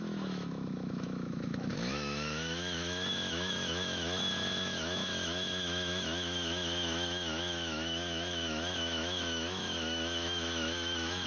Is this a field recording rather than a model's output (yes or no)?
no